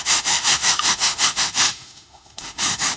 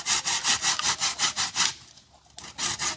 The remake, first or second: first